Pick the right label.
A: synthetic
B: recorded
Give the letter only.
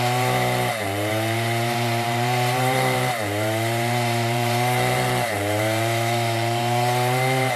A